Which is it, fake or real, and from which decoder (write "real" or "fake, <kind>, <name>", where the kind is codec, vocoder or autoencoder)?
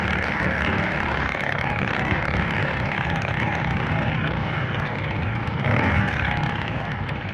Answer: fake, codec, DAC